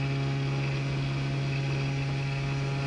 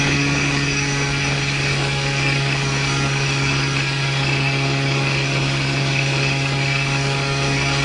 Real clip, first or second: first